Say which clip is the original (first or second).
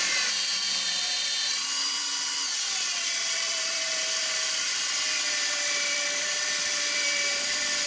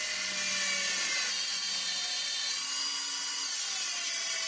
second